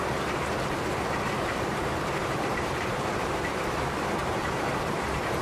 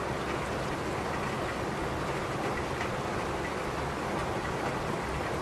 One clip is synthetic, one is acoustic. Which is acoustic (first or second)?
second